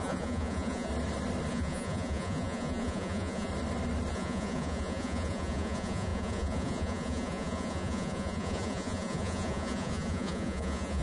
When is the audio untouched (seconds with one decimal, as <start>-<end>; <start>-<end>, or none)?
0.9-1.5; 3.5-4.1